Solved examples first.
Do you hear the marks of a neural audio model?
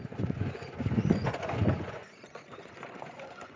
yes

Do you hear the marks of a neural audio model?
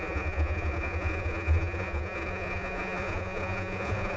yes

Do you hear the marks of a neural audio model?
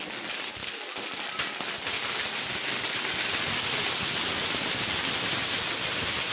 no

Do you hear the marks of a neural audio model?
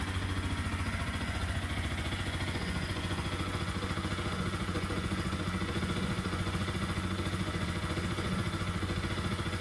yes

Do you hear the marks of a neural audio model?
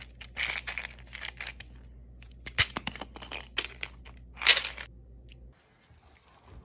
no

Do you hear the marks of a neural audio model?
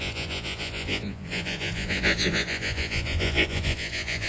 yes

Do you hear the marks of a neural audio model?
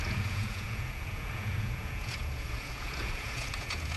yes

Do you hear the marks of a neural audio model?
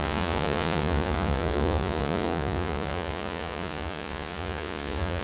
yes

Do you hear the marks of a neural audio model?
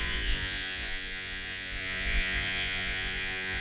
yes